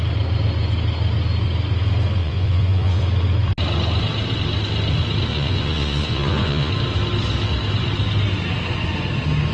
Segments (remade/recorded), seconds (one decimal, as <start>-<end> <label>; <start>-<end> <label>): 0.0-2.2 recorded; 2.2-3.0 remade; 3.0-5.3 recorded; 5.3-6.7 remade; 6.7-9.5 recorded